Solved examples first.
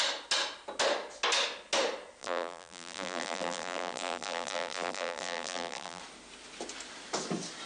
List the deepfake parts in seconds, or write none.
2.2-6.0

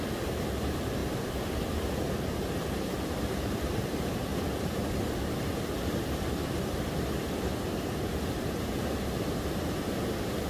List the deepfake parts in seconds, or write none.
0.0-1.0; 2.8-4.3; 8.1-10.5